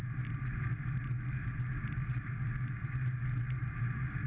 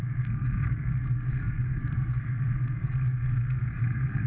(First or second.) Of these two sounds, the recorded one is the first